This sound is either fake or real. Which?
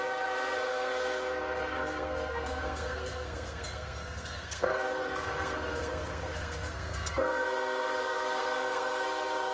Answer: fake